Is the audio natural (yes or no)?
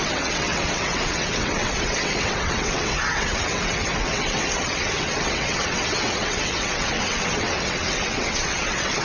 no